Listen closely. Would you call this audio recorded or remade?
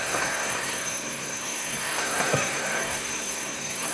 remade